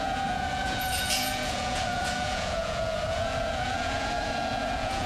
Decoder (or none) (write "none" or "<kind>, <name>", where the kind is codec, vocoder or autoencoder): vocoder, Vocos